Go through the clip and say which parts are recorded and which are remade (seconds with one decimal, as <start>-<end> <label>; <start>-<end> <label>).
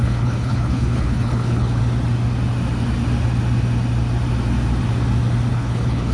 0.0-1.8 remade; 1.8-5.5 recorded; 5.5-6.1 remade